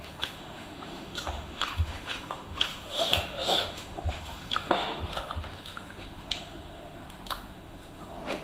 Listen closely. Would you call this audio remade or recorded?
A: remade